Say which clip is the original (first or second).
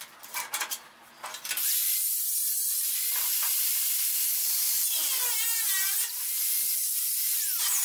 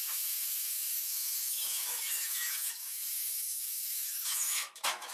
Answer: first